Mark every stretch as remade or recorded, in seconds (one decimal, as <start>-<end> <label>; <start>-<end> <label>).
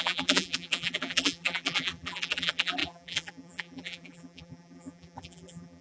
0.0-5.8 remade